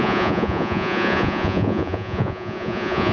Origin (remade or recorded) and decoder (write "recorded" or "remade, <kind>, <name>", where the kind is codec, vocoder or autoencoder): remade, vocoder, Vocos